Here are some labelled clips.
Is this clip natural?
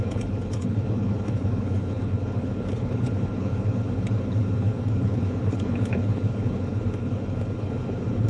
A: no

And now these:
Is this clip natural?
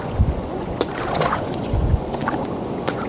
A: no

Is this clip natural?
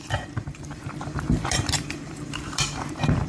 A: no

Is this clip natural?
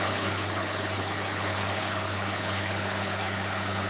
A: no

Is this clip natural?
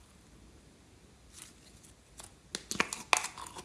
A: yes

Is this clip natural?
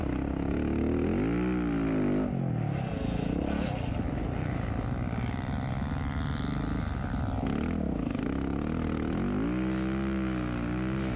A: yes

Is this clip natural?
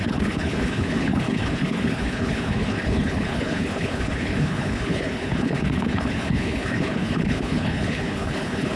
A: no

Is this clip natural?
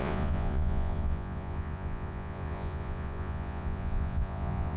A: no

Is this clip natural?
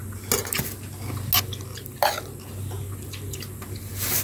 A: yes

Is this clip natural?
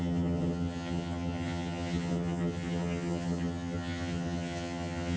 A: no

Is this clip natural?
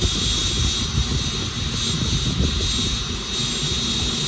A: yes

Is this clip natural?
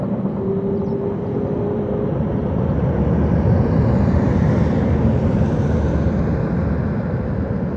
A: yes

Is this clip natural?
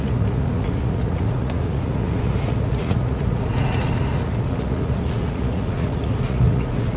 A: no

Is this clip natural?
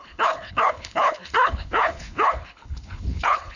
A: no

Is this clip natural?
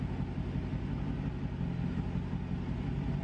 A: yes